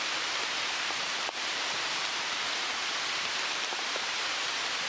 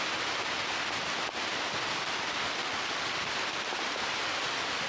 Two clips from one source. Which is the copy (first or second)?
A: first